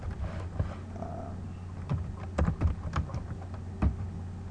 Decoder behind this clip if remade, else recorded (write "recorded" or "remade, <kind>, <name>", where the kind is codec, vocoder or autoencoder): recorded